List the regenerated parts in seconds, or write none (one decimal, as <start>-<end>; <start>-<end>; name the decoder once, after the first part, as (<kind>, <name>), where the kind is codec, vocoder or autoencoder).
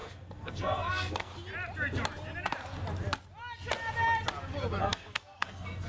0.0-1.3 (codec, SNAC); 4.8-5.9